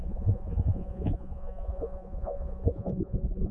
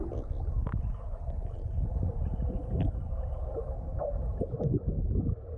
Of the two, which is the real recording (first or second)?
second